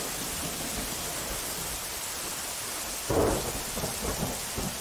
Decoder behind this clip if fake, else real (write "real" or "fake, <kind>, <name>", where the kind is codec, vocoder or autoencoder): real